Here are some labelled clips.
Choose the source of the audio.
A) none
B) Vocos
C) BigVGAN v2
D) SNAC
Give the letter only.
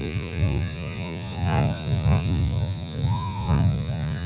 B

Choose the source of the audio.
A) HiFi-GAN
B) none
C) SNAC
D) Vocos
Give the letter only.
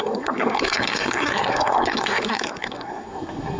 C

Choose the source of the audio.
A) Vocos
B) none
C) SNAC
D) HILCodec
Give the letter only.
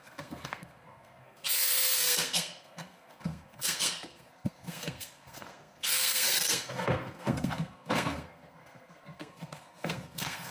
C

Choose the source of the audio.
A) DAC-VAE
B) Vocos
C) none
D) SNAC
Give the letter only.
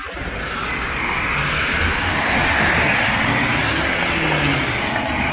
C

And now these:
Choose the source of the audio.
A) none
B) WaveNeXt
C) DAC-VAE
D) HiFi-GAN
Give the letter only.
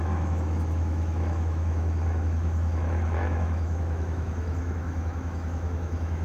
C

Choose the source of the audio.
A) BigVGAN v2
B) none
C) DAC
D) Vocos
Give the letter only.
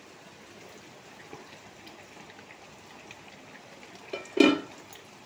B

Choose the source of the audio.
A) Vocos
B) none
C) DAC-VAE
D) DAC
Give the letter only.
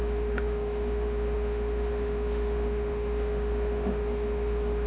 C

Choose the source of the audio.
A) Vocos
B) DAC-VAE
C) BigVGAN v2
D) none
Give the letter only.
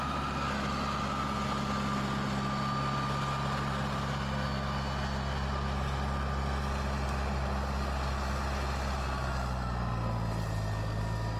D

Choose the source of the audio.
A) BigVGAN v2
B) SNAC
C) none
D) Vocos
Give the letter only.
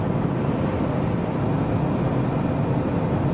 C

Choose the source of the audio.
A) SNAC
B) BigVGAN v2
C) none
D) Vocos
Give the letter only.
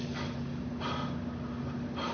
C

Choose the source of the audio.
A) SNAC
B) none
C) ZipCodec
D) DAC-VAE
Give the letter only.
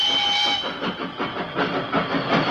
B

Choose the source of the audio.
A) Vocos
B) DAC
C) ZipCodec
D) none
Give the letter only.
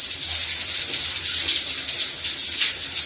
D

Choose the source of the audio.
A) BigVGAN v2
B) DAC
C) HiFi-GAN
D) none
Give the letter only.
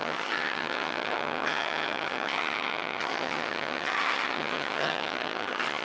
C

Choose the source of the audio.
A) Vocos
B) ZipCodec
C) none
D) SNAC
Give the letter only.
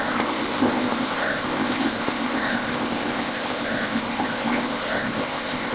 B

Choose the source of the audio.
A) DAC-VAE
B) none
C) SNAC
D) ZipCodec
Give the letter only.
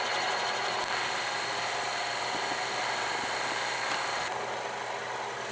B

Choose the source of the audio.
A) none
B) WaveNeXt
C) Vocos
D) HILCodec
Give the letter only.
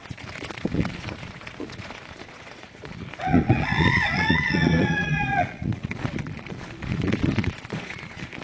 C